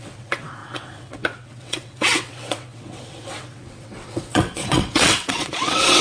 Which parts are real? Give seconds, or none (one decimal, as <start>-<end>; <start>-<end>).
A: none